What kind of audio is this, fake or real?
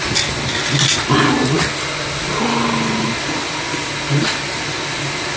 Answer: real